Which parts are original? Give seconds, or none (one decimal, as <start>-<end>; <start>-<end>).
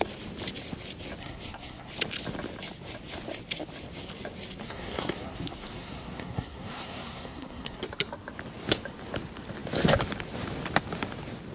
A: 0.0-1.2; 1.9-4.6; 7.8-11.5